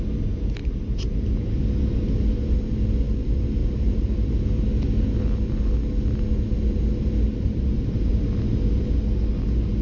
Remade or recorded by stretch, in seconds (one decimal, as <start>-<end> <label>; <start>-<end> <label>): 0.0-0.6 recorded; 0.6-1.6 remade; 1.6-3.6 recorded; 3.6-4.3 remade; 4.3-7.3 recorded; 7.3-8.3 remade; 8.3-9.8 recorded

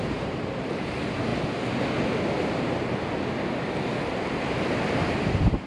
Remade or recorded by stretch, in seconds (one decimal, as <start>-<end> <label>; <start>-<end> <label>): 0.0-1.3 remade; 1.3-4.7 recorded; 4.7-5.7 remade

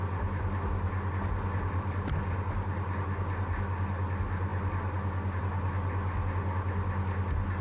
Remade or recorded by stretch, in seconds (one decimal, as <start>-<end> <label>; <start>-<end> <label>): 0.0-7.6 recorded